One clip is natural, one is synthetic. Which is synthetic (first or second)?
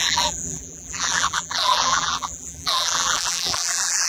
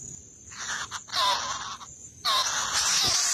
first